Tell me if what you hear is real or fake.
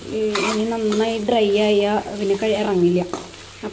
real